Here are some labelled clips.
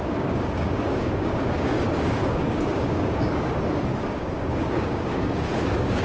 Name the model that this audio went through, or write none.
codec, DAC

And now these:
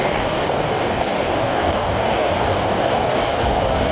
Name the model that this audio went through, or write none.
codec, DAC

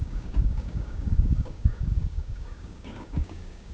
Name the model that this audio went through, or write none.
codec, DAC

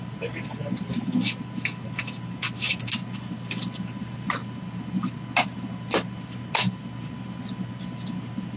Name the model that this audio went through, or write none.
none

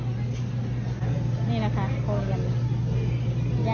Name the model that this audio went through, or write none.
none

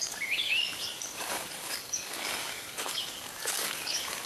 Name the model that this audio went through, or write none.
codec, DAC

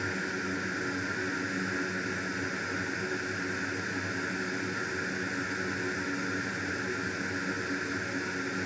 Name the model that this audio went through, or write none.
none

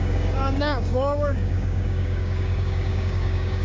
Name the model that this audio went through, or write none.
codec, DAC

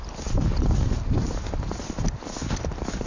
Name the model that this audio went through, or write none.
none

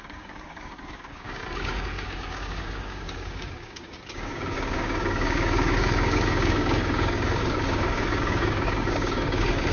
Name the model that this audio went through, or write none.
codec, DAC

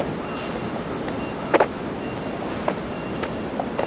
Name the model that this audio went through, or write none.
none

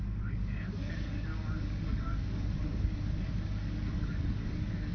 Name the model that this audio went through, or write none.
codec, DAC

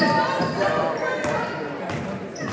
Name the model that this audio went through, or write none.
none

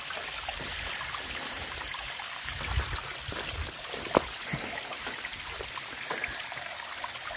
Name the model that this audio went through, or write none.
none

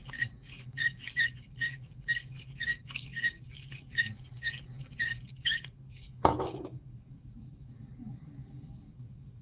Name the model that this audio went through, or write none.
codec, DAC